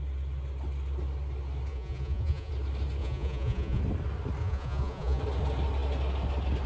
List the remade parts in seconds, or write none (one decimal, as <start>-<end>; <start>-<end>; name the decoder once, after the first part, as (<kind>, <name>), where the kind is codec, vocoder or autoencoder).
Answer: 1.7-2.5 (vocoder, Vocos); 3.0-3.8; 4.4-5.2